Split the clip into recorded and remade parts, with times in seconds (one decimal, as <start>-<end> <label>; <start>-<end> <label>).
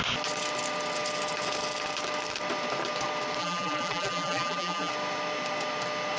0.0-3.4 recorded; 3.4-4.9 remade; 4.9-6.2 recorded